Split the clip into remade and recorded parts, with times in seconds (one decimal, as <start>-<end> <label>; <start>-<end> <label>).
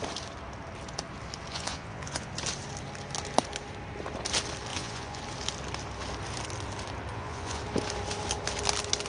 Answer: 0.0-1.5 recorded; 1.5-2.3 remade; 2.3-4.7 recorded; 4.7-5.2 remade; 5.2-7.1 recorded; 7.1-7.6 remade; 7.6-9.1 recorded